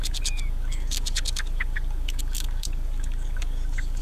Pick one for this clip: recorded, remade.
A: remade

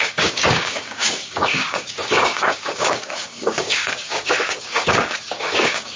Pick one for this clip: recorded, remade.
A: remade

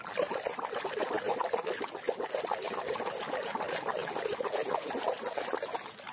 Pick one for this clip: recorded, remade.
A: recorded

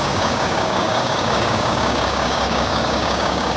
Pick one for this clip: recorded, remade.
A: remade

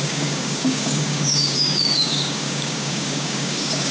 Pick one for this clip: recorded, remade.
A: remade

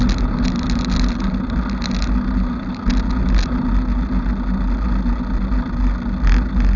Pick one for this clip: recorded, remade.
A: recorded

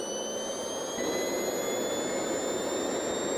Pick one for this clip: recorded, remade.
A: recorded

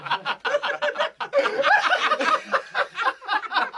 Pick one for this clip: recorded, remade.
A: recorded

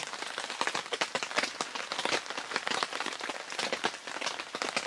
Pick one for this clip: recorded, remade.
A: recorded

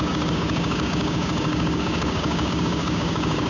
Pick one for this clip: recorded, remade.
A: remade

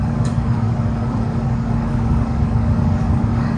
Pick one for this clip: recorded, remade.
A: remade